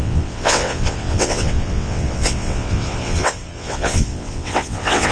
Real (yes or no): no